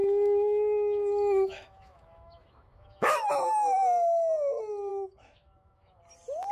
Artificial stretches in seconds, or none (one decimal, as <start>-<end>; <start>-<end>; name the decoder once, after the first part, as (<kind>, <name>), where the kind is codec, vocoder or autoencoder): 0.0-3.3 (autoencoder, DAC-VAE); 4.9-6.0